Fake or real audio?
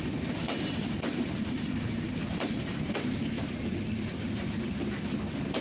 fake